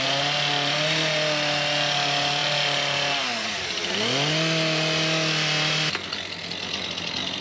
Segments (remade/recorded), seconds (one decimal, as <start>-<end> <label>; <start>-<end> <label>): 0.0-7.4 recorded